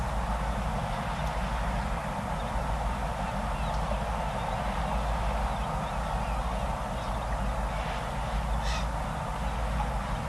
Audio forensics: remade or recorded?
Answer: recorded